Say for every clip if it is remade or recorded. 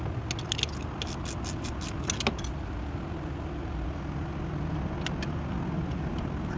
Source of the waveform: recorded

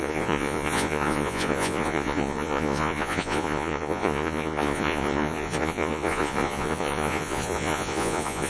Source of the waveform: remade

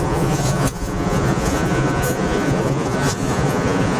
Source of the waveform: remade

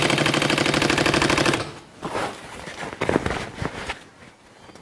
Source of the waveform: recorded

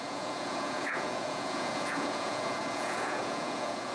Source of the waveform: remade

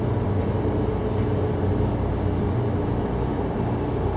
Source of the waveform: recorded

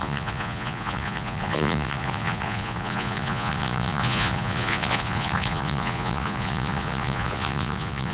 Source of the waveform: remade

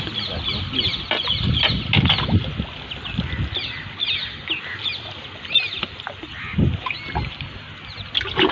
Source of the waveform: recorded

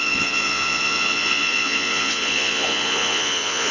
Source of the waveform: remade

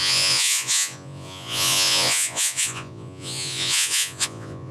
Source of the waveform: remade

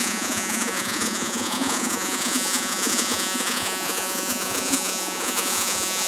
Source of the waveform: remade